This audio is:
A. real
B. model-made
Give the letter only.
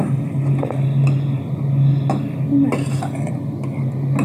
A